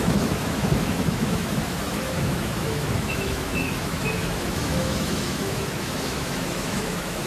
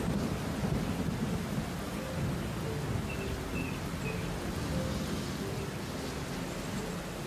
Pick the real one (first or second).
second